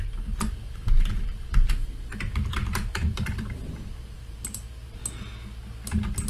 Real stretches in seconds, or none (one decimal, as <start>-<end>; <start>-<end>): 5.0-6.3